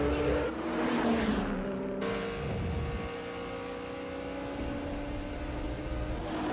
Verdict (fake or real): real